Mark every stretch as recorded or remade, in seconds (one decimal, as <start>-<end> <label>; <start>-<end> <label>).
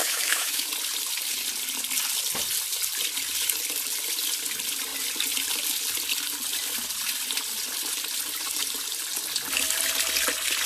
0.0-0.7 remade; 0.7-10.7 recorded